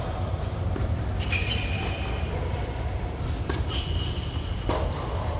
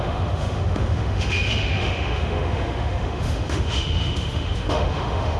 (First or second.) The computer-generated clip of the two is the second